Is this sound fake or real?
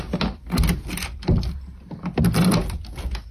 real